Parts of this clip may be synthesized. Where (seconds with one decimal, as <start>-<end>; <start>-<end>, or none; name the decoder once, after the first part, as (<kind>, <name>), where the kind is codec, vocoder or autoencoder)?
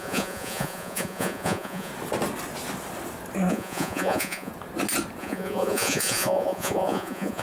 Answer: 0.0-1.9 (vocoder, Vocos); 3.5-4.5; 5.2-7.4